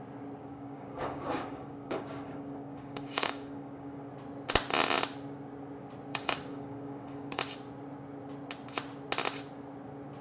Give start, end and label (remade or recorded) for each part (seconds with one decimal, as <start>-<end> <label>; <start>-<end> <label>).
0.0-0.4 recorded; 0.4-4.1 remade; 4.1-6.1 recorded; 6.1-7.4 remade; 7.4-10.2 recorded